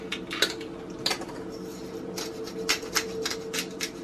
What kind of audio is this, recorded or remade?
recorded